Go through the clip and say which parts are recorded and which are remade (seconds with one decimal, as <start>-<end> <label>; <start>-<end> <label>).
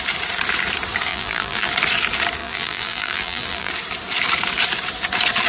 0.0-1.1 recorded; 1.1-1.7 remade; 1.7-2.4 recorded; 2.4-3.7 remade; 3.7-5.5 recorded